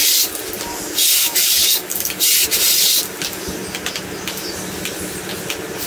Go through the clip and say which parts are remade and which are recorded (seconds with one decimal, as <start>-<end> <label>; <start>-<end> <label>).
0.0-1.2 recorded; 1.2-2.2 remade; 2.2-5.9 recorded